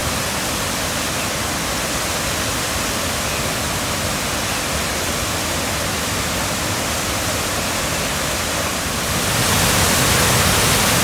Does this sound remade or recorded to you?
recorded